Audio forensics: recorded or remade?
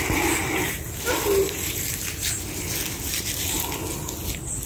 recorded